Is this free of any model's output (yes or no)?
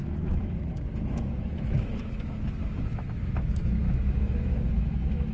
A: no